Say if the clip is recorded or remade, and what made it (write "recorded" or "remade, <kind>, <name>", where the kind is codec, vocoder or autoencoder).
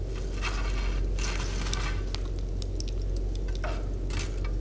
recorded